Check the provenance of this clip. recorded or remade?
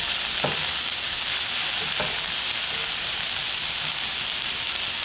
recorded